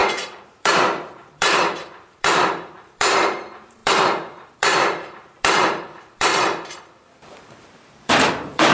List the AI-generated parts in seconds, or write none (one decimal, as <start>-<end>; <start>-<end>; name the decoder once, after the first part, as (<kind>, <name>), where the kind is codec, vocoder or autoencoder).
0.0-6.3 (vocoder, BigVGAN v2); 7.3-8.7